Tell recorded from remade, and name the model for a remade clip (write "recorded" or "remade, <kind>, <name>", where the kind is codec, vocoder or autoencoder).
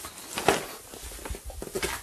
recorded